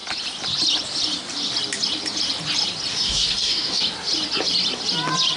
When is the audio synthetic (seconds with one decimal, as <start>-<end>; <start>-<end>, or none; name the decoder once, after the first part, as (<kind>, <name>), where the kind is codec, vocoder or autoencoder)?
2.9-3.8 (codec, DAC)